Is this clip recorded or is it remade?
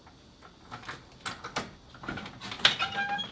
recorded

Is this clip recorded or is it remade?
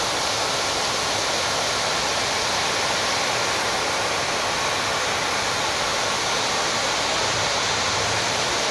recorded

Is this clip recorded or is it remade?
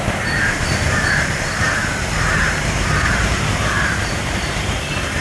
remade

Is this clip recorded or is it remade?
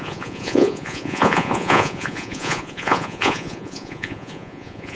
remade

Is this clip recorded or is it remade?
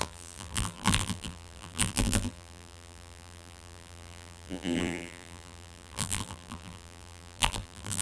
remade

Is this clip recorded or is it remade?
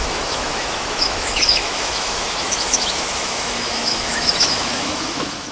remade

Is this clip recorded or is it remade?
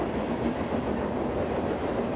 recorded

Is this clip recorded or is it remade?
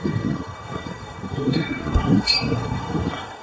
remade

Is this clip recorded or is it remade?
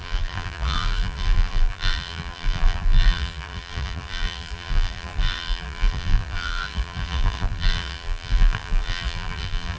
remade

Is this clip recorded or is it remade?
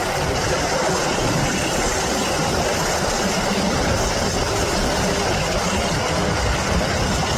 recorded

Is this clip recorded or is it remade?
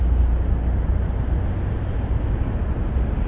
recorded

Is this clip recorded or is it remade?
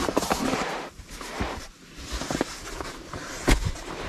recorded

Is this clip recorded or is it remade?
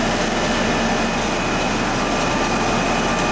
recorded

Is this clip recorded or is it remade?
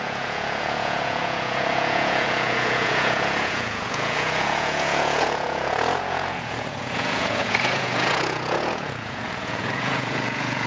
remade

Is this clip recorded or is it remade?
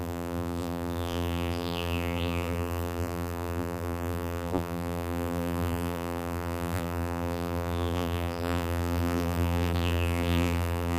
remade